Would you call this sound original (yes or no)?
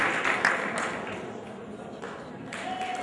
yes